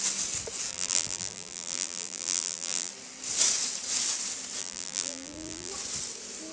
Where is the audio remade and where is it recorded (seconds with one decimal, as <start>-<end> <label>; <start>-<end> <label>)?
0.0-0.7 recorded; 0.7-2.9 remade; 2.9-4.6 recorded; 4.6-5.7 remade; 5.7-6.5 recorded